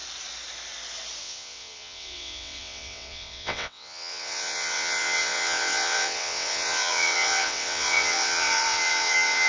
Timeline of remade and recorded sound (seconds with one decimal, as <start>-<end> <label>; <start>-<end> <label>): 0.0-1.2 recorded; 1.2-9.5 remade